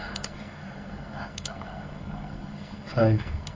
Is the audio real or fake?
fake